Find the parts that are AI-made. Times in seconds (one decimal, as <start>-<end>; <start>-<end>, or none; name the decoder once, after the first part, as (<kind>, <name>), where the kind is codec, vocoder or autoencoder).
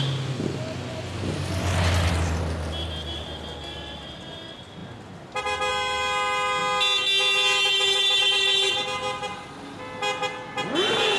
none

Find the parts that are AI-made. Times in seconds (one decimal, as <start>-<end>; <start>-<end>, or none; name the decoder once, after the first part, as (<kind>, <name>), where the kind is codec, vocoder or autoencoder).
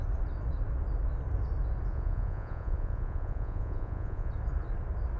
1.9-4.3 (vocoder, Vocos)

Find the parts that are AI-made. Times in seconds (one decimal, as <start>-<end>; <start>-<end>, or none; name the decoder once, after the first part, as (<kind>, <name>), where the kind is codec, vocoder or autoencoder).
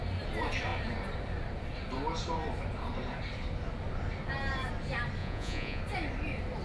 5.2-5.8 (vocoder, Vocos)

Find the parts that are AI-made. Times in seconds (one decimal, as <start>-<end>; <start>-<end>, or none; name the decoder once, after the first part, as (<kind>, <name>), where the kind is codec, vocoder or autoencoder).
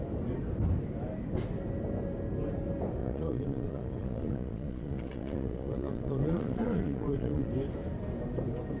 3.0-7.5 (vocoder, Vocos)